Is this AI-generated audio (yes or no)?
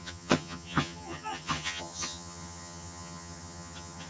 yes